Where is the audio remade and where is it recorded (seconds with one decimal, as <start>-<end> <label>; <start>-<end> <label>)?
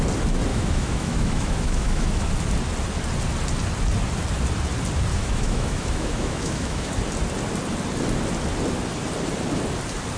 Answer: 0.0-0.5 recorded; 0.5-2.3 remade; 2.3-5.1 recorded; 5.1-6.9 remade; 6.9-10.2 recorded